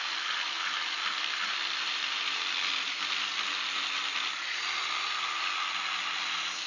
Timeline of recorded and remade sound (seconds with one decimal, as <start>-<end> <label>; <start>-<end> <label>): 0.0-6.7 recorded